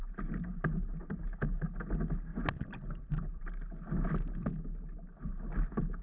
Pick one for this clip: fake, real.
real